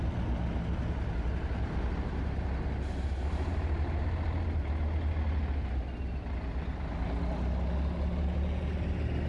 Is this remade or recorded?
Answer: recorded